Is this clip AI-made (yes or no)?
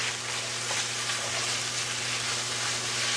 no